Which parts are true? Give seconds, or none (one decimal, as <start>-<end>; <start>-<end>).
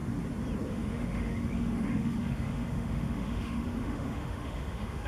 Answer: 0.0-0.7